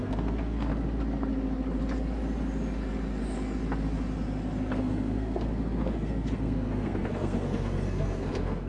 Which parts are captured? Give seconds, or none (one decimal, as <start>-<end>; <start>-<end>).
0.7-4.8